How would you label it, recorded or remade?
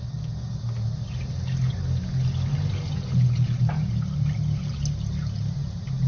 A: recorded